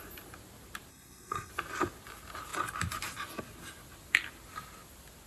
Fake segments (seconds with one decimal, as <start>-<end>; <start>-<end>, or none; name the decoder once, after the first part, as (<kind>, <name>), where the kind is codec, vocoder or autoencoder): 0.9-1.5 (codec, SNAC)